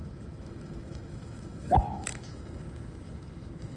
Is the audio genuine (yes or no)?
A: no